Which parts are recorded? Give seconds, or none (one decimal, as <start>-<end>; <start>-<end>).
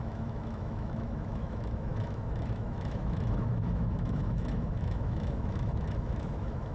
none